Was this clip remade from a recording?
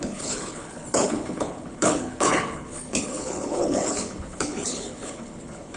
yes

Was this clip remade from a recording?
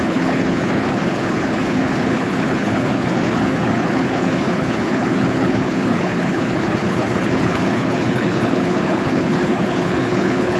yes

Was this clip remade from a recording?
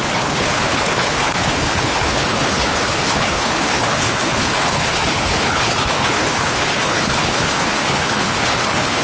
yes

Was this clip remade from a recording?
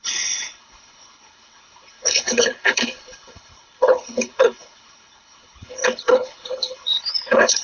yes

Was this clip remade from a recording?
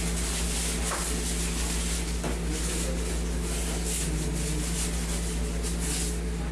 no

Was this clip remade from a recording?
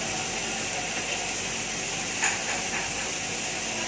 no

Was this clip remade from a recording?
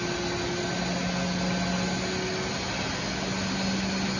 no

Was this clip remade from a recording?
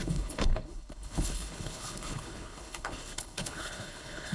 yes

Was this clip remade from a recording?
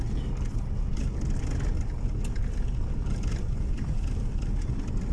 no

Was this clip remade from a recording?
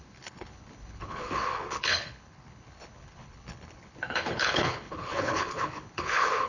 yes